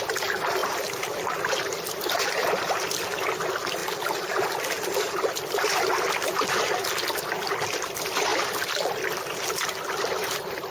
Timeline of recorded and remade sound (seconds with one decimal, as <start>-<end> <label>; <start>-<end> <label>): 0.0-0.6 recorded; 0.6-3.2 remade; 3.2-10.7 recorded

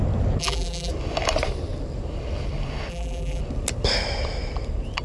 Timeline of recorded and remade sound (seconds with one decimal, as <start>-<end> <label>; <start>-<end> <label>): 0.0-0.4 recorded; 0.4-0.9 remade; 0.9-2.9 recorded; 2.9-3.4 remade; 3.4-5.0 recorded

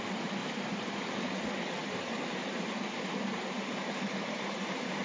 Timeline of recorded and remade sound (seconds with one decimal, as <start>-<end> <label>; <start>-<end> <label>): 0.0-0.4 recorded; 0.4-1.0 remade; 1.0-1.8 recorded; 1.8-5.0 remade

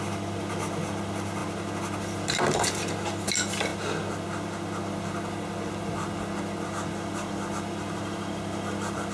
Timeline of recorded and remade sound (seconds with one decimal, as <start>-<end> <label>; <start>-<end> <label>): 0.0-9.1 recorded